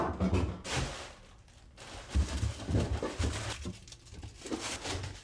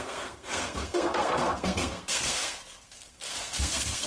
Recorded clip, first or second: first